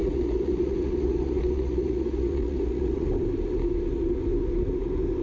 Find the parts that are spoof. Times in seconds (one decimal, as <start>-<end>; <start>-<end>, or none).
0.0-3.1